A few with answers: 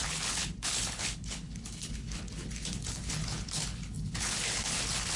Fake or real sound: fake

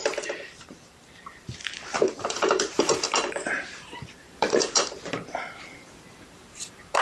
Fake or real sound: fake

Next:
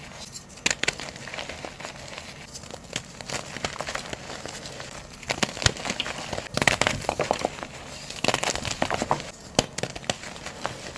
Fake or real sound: real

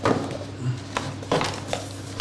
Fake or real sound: real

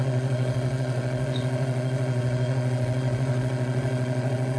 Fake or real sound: fake